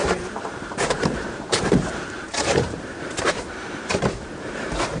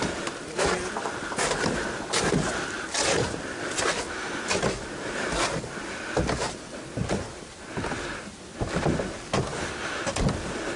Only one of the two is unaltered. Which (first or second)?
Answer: second